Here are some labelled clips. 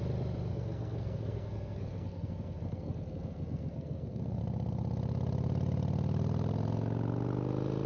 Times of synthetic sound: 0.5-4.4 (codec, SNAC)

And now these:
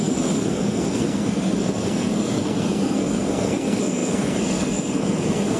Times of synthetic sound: 0.0-5.6 (codec, SNAC)

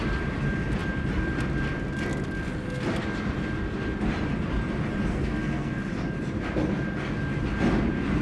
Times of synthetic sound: 5.1-5.8 (codec, SNAC)